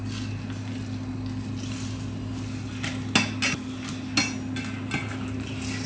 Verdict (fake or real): real